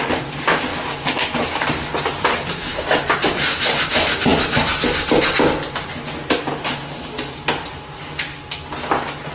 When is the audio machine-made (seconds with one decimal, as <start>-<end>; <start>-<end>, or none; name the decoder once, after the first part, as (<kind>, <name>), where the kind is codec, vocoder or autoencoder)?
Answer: none